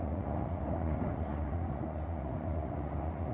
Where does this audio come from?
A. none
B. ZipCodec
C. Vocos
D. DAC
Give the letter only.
C